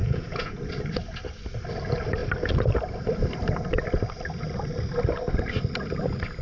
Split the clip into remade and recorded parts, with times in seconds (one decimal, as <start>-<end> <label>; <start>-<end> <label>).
0.0-0.6 remade; 0.6-6.4 recorded